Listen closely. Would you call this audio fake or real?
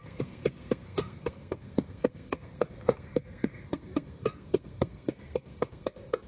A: fake